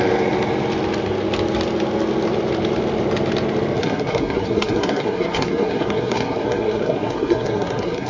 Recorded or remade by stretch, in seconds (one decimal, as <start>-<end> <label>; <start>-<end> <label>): 0.0-3.8 recorded; 3.8-8.1 remade